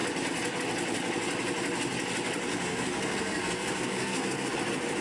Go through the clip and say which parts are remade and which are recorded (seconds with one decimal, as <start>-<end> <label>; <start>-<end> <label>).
0.0-2.5 recorded; 2.5-4.5 remade; 4.5-5.0 recorded

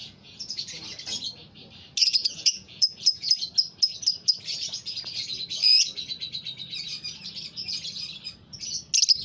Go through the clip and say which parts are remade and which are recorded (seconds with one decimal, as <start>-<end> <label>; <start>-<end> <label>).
0.0-0.7 remade; 0.7-2.0 recorded; 2.0-3.3 remade; 3.3-9.2 recorded

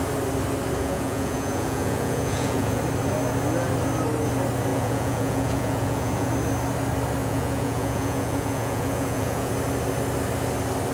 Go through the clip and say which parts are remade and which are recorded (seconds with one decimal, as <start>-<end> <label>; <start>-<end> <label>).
0.0-0.8 recorded; 0.8-2.8 remade; 2.8-4.7 recorded; 4.7-6.3 remade; 6.3-7.2 recorded; 7.2-9.5 remade; 9.5-10.9 recorded

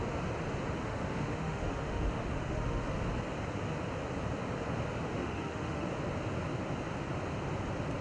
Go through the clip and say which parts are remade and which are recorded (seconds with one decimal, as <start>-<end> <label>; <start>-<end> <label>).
0.0-0.8 recorded; 0.8-2.8 remade; 2.8-5.2 recorded; 5.2-5.9 remade; 5.9-8.0 recorded

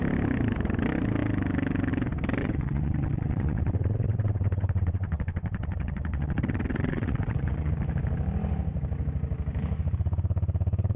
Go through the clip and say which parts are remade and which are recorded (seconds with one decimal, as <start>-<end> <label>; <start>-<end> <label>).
0.0-2.4 recorded; 2.4-7.7 remade; 7.7-11.0 recorded

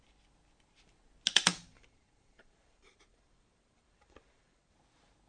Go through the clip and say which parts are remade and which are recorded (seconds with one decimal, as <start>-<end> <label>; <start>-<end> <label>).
0.0-1.5 recorded; 1.5-4.7 remade; 4.7-5.3 recorded

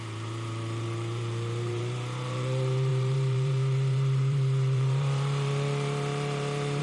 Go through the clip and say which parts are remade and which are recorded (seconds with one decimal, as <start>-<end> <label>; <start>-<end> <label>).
0.0-6.8 remade